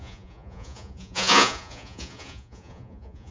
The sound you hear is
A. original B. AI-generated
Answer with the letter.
B